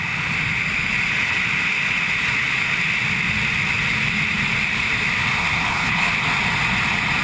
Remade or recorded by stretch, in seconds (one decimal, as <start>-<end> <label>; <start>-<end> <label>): 0.0-5.4 recorded; 5.4-6.1 remade; 6.1-7.2 recorded